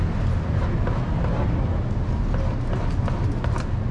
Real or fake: real